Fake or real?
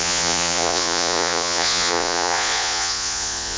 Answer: fake